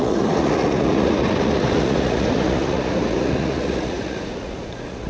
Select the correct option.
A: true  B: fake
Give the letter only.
B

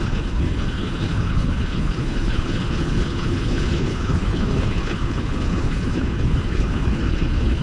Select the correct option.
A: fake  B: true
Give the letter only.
A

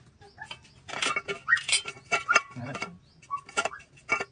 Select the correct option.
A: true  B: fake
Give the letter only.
A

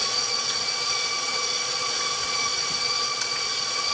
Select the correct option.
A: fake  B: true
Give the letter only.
A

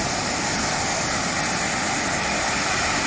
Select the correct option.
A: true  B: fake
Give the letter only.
A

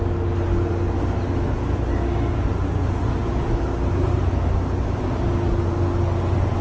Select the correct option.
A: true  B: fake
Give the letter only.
A